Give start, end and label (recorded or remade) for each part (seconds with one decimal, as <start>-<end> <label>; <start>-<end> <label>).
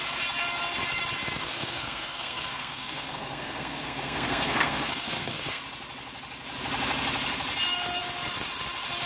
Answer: 0.0-1.4 recorded; 1.4-5.6 remade; 5.6-9.1 recorded